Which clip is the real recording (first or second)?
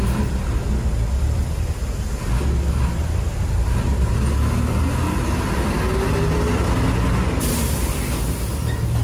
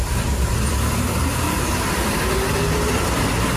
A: first